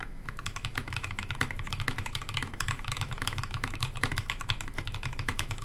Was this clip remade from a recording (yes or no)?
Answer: yes